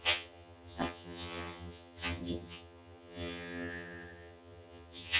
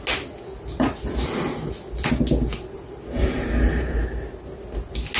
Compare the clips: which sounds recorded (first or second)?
second